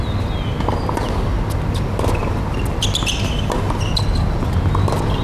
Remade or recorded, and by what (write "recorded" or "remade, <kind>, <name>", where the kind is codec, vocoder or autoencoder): recorded